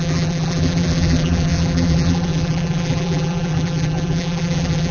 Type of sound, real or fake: fake